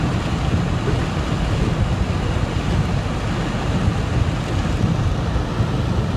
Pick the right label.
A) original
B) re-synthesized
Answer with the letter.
A